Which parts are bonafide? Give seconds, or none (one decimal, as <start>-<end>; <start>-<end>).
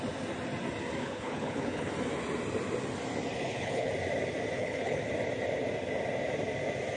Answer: 0.0-1.0; 1.9-3.4; 3.9-4.6; 5.1-7.0